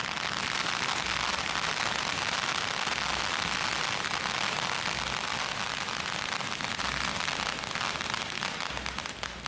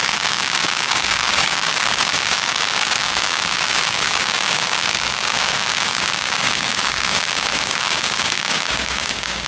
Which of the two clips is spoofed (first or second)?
second